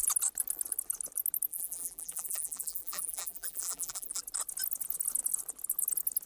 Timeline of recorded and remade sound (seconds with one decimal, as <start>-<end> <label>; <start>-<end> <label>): 0.0-1.5 recorded; 1.5-4.2 remade; 4.2-6.3 recorded